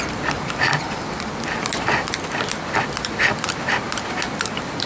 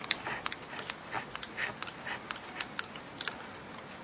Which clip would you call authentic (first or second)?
second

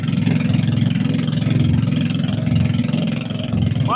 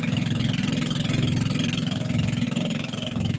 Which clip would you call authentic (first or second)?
first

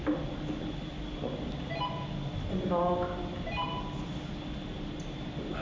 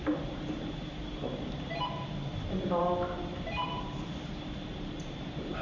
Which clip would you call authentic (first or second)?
first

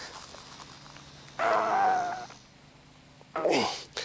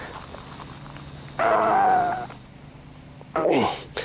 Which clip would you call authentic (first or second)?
first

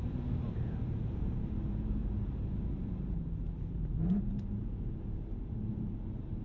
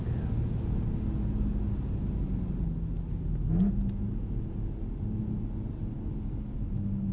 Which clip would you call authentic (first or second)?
second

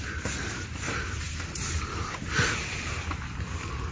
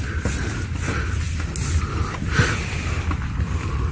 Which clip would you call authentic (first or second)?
second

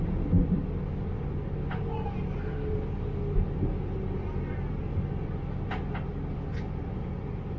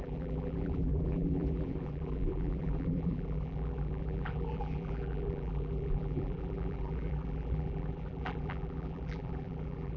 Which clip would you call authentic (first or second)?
first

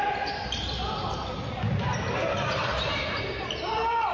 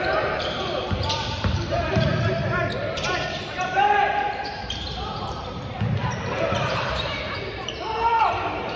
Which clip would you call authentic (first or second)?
first